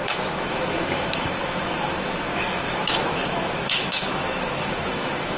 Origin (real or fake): fake